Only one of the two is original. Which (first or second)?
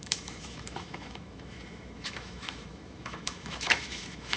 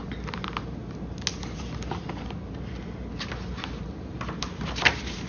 second